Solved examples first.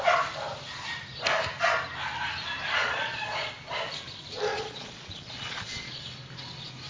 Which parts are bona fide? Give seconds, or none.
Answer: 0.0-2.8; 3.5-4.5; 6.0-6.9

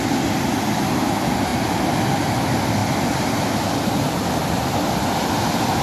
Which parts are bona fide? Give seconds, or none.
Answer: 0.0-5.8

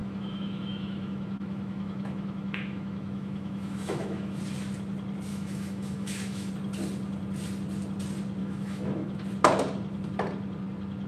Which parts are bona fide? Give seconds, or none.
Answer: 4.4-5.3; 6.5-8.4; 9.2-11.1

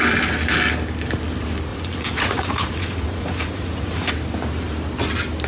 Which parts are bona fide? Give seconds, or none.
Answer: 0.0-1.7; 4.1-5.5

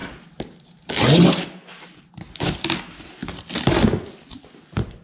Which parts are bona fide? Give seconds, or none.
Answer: 0.0-5.0

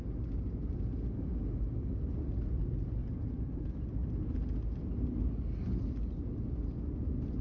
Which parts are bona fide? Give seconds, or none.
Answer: 0.0-7.4

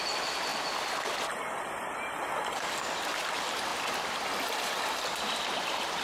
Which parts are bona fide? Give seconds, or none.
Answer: 0.0-6.0

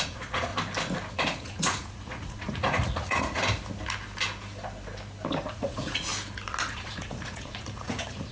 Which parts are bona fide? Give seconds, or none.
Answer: 0.5-1.1; 3.4-5.5; 6.1-6.7